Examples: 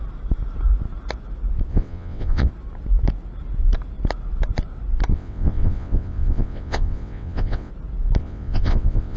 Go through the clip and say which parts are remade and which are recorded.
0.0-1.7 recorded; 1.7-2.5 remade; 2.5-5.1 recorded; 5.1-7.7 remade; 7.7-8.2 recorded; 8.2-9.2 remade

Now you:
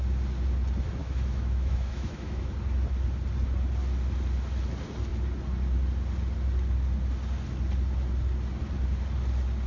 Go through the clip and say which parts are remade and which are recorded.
0.0-1.0 recorded; 1.0-2.5 remade; 2.5-9.7 recorded

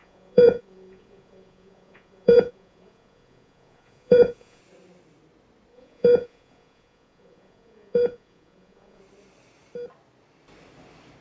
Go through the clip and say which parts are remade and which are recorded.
0.0-4.6 remade; 4.6-5.7 recorded; 5.7-9.0 remade; 9.0-11.2 recorded

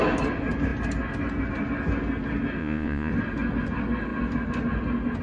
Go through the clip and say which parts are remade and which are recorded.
0.0-2.6 recorded; 2.6-3.1 remade; 3.1-5.2 recorded

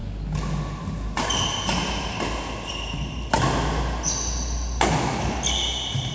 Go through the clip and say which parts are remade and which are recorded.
0.0-6.1 recorded

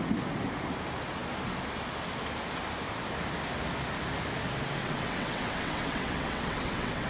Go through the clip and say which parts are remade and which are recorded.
0.0-4.8 recorded; 4.8-7.1 remade

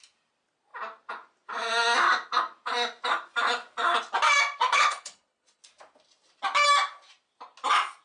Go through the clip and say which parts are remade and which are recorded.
0.0-4.7 recorded; 4.7-5.6 remade; 5.6-8.0 recorded